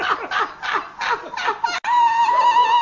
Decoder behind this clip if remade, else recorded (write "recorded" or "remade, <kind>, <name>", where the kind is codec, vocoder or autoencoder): recorded